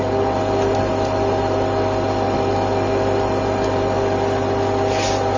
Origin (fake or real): real